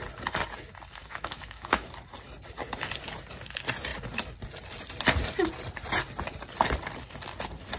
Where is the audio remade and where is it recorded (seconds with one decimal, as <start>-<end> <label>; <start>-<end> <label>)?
0.0-1.0 recorded; 1.0-1.9 remade; 1.9-7.8 recorded